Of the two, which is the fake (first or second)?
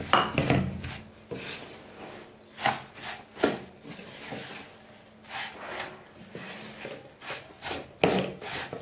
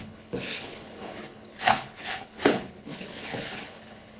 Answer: second